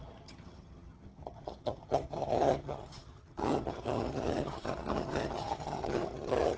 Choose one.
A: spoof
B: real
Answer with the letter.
A